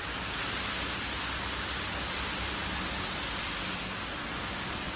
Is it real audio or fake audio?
real